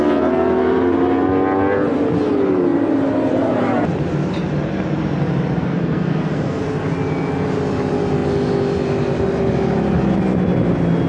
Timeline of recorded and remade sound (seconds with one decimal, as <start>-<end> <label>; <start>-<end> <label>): 0.0-5.6 recorded; 5.6-6.6 remade; 6.6-11.1 recorded